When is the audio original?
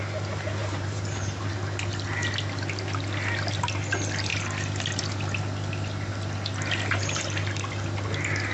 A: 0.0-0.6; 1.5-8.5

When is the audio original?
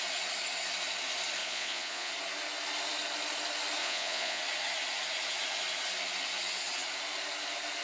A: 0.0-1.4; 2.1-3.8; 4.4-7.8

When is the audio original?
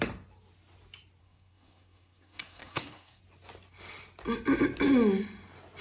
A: 0.0-1.2; 3.2-5.8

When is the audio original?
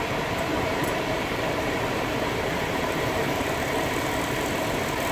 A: 0.0-0.5; 3.3-5.1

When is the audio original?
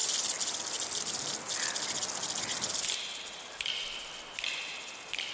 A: 0.0-5.3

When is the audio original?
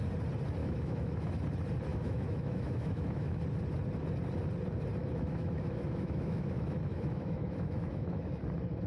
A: 0.0-0.6; 1.3-1.9; 3.4-5.0; 8.4-8.9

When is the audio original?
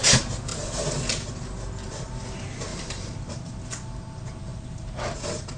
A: 0.0-2.7; 3.5-5.6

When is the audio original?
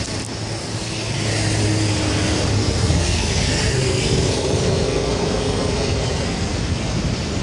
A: 0.0-2.6; 7.0-7.4